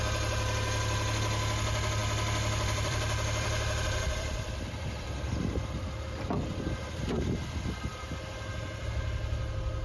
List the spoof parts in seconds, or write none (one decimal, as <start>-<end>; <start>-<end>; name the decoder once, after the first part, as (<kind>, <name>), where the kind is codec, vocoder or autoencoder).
2.0-6.9 (vocoder, BigVGAN v2)